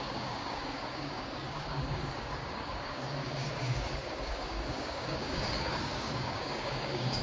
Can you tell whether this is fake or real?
fake